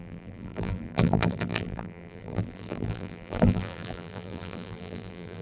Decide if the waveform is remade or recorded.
remade